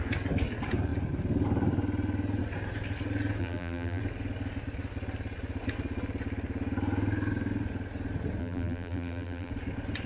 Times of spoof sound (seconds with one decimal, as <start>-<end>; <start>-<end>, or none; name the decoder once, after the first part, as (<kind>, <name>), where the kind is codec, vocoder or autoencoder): 3.4-4.0 (vocoder, BigVGAN v2); 8.4-9.5